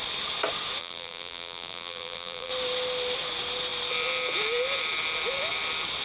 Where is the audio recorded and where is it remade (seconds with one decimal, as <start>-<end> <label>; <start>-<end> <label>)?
0.0-0.8 recorded; 0.8-2.5 remade; 2.5-6.0 recorded